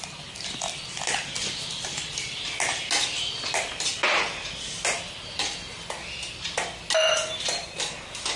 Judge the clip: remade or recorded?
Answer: recorded